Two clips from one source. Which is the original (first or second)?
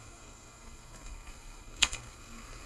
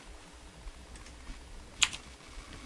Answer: second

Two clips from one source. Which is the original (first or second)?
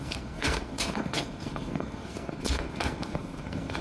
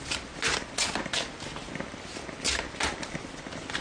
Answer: second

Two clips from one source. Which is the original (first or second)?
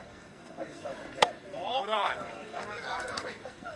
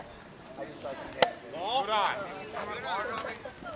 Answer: second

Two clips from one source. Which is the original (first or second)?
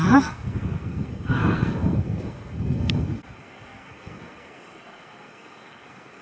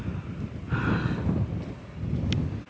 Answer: second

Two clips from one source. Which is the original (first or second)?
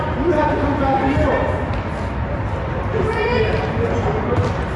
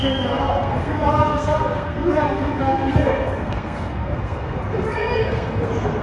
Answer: first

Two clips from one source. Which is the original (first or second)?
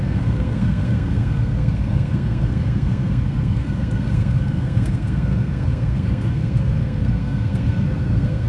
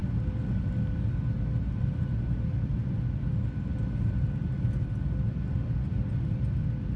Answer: second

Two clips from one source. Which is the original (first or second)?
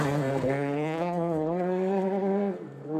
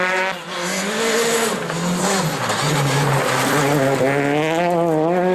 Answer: second